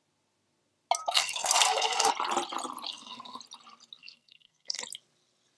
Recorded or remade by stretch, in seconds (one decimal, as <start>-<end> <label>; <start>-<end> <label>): 0.0-1.0 recorded; 1.0-2.1 remade; 2.1-2.9 recorded; 2.9-3.4 remade; 3.4-4.0 recorded; 4.0-4.8 remade; 4.8-5.6 recorded